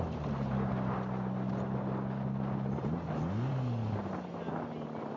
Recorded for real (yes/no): yes